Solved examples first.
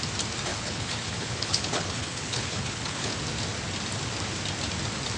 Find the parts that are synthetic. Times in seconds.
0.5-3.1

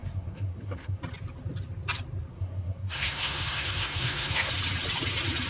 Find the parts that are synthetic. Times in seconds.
0.0-1.0; 2.3-4.5

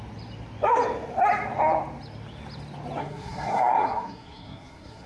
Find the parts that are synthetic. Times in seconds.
3.0-5.1

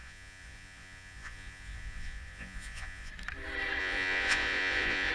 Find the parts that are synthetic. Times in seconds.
0.0-3.1; 3.8-5.1

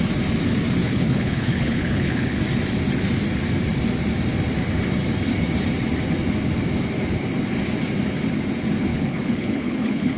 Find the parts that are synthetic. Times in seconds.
0.8-2.4; 8.9-10.2

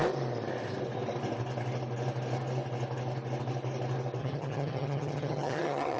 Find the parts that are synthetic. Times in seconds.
4.2-6.0

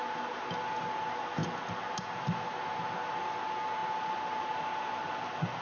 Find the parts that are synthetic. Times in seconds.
none

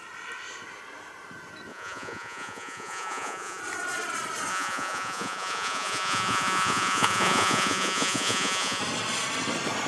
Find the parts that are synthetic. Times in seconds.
1.7-3.6; 4.5-8.8